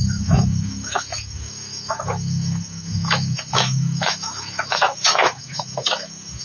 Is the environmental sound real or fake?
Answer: fake